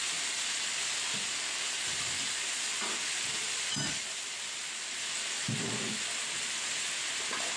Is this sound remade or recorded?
recorded